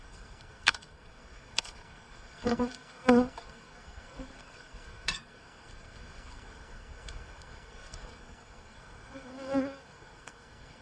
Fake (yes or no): yes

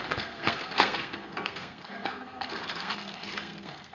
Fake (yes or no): yes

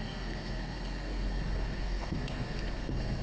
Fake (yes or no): yes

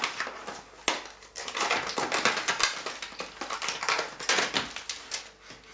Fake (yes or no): no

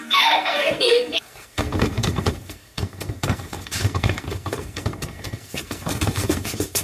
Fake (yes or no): yes